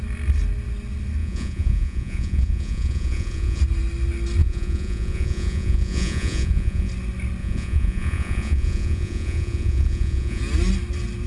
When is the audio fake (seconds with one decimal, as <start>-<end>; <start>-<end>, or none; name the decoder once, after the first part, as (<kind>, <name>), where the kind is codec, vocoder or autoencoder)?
1.2-3.6 (vocoder, Vocos); 4.4-6.9; 7.4-10.4